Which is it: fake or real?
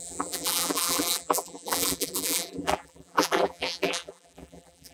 fake